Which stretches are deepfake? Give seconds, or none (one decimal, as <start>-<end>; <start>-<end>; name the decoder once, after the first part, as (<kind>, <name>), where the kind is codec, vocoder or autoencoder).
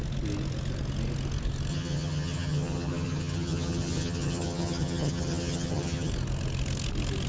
1.7-6.1 (vocoder, HiFi-GAN)